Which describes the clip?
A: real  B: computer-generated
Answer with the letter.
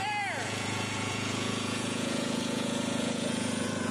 B